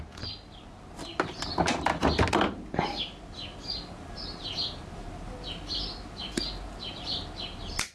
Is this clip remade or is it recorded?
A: recorded